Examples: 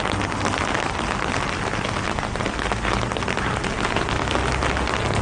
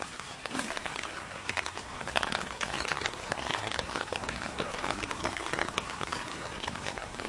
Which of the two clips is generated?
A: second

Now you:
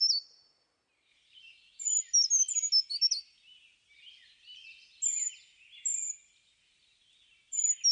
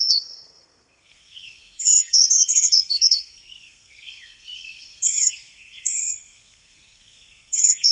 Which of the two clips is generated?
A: second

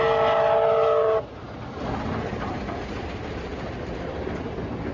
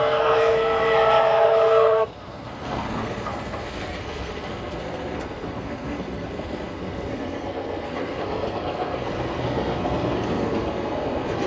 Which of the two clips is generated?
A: second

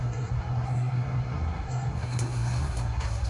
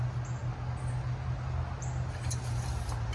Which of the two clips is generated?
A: first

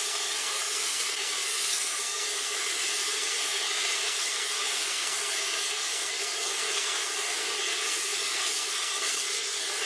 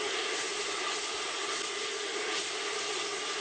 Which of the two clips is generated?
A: first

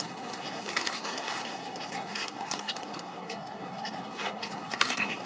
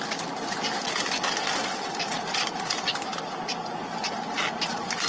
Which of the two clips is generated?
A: first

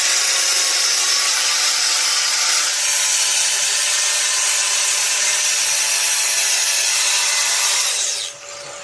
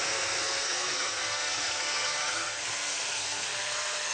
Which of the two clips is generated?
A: second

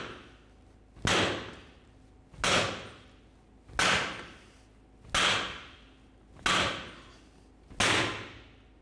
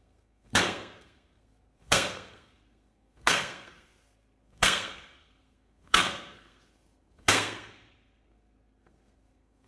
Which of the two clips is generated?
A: second